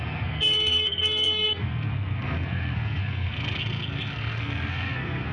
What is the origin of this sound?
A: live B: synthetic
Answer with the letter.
B